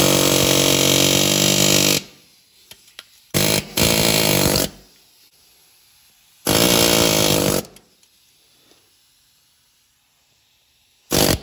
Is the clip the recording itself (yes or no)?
yes